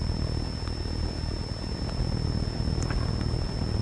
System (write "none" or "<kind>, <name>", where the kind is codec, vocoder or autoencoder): none